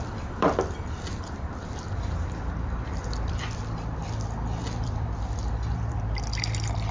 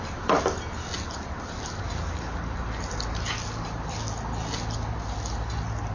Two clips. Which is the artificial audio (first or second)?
first